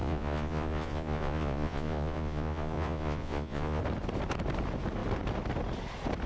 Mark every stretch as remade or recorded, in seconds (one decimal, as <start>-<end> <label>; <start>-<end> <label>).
0.0-3.8 remade; 3.8-6.3 recorded